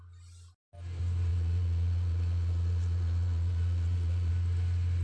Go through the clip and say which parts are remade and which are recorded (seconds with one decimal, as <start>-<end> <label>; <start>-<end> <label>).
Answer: 0.0-1.3 recorded; 1.3-4.3 remade; 4.3-5.0 recorded